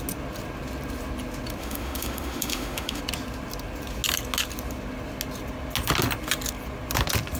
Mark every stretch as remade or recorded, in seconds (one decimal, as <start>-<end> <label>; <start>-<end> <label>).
0.0-1.6 recorded; 1.6-3.0 remade; 3.0-7.4 recorded